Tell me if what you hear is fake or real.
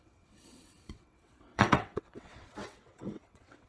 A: fake